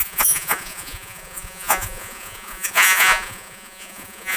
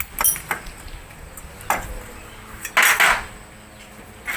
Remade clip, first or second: first